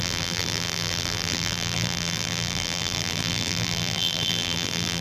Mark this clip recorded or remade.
remade